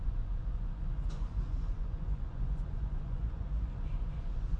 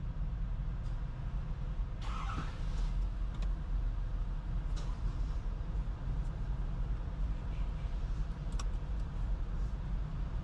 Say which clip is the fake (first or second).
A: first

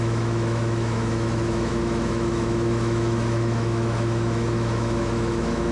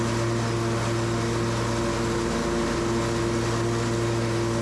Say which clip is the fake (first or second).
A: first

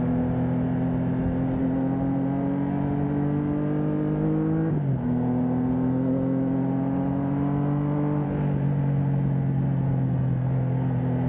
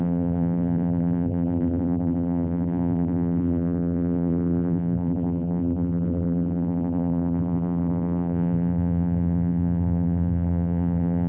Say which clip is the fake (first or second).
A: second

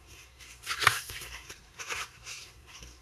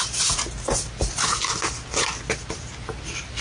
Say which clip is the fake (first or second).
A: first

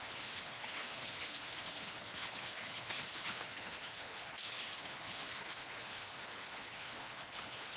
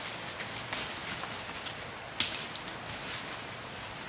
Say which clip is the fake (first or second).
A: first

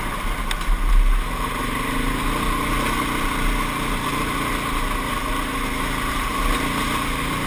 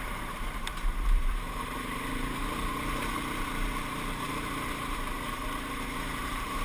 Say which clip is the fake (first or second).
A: second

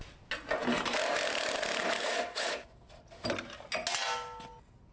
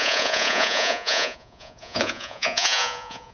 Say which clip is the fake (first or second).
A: second